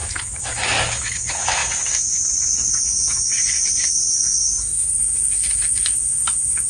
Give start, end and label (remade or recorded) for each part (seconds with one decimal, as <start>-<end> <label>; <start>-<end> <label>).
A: 0.0-6.7 remade